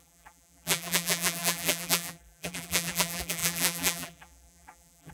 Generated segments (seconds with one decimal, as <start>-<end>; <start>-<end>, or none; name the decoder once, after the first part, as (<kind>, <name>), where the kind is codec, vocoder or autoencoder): 0.0-5.1 (vocoder, BigVGAN v2)